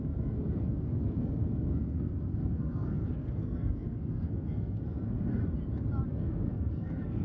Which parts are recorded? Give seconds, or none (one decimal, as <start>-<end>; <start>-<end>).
5.4-6.1